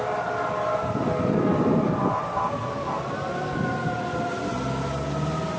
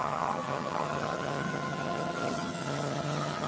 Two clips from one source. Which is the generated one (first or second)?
second